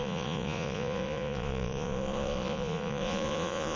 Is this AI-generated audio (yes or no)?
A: yes